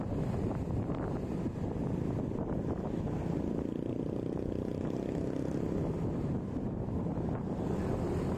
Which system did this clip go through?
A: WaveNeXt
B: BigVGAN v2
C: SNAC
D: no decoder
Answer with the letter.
D